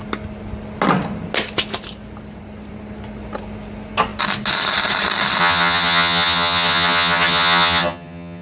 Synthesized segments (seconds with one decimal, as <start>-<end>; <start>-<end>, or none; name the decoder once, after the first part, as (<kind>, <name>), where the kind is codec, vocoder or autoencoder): 5.4-8.4 (vocoder, HiFi-GAN)